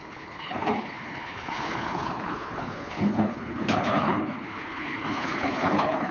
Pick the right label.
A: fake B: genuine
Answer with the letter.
A